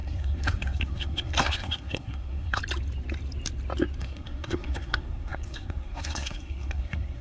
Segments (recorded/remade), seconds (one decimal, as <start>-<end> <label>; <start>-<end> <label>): 0.0-2.6 remade; 2.6-4.0 recorded; 4.0-7.2 remade